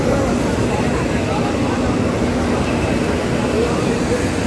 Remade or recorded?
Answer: recorded